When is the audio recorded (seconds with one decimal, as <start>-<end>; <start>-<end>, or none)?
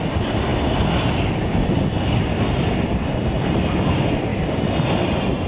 0.0-5.5